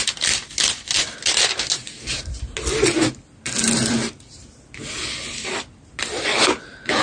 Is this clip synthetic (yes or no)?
no